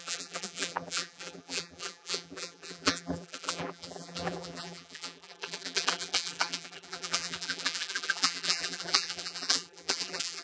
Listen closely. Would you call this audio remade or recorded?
remade